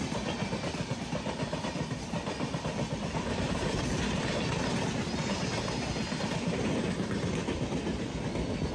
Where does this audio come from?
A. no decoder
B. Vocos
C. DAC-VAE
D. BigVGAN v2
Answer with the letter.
D